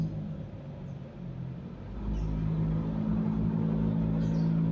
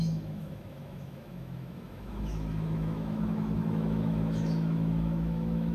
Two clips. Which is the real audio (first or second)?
first